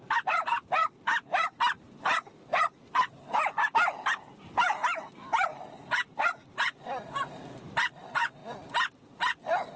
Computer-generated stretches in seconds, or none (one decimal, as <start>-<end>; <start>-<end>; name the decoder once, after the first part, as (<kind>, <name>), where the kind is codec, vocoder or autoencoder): 0.8-1.6 (vocoder, BigVGAN v2); 5.5-7.6